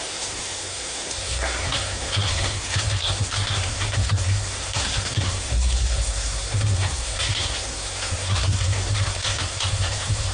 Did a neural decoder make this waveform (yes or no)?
yes